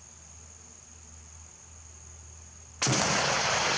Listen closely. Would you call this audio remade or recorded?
recorded